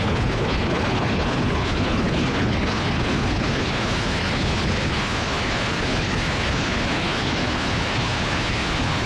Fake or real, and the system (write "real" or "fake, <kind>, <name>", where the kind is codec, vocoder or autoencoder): fake, codec, HILCodec